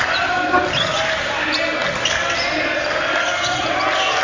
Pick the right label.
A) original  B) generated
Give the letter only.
A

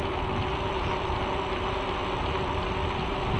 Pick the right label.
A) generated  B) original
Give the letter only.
B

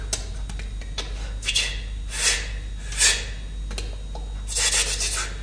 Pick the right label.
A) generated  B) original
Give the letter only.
B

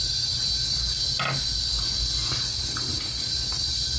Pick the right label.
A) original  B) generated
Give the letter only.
A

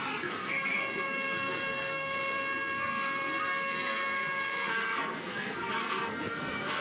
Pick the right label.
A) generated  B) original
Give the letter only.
A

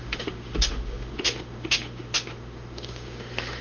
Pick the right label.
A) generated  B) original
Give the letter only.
A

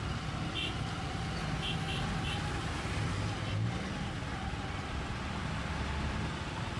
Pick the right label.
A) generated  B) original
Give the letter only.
B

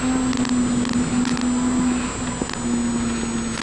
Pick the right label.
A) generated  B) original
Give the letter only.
B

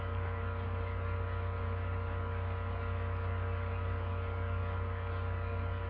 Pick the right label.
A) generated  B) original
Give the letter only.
A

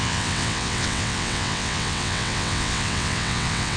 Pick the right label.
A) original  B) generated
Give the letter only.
B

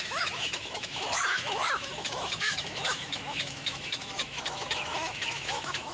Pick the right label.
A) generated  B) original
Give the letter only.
A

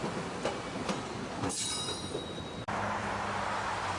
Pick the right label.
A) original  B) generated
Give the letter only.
A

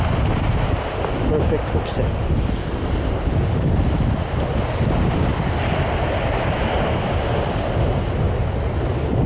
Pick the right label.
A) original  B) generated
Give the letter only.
A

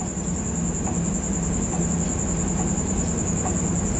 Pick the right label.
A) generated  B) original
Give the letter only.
B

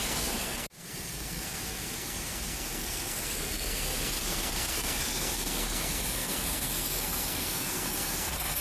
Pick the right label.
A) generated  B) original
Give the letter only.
A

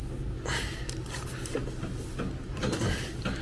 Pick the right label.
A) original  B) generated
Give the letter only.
A